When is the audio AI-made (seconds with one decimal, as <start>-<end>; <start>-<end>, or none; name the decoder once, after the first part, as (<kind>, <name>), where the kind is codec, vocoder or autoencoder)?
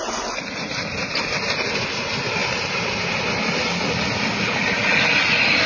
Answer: none